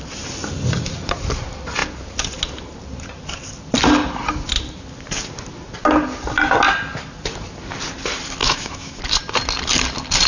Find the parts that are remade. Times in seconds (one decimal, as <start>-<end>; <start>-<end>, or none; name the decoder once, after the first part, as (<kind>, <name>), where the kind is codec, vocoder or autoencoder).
8.4-9.0 (autoencoder, DAC-VAE)